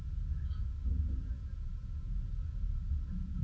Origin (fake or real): fake